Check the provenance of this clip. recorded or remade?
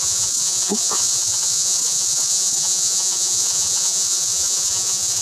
remade